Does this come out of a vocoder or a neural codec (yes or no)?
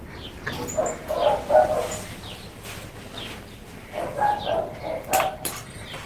no